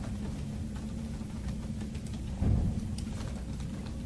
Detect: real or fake real